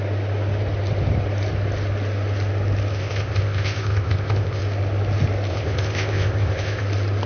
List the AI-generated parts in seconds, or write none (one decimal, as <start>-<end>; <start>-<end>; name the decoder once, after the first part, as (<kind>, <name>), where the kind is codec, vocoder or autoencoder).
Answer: 2.9-4.6 (codec, ZipCodec); 5.5-6.8